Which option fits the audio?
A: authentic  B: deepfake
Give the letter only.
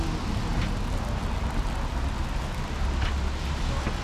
A